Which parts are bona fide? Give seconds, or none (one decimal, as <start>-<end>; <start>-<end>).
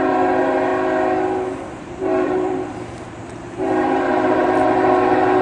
0.7-1.8